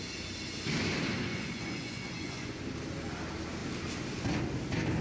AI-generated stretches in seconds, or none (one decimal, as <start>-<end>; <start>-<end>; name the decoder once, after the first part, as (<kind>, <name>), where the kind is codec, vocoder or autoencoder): 1.3-2.6 (vocoder, Vocos)